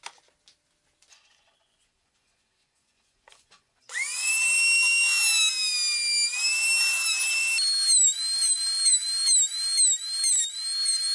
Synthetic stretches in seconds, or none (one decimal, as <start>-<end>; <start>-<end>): 1.1-4.3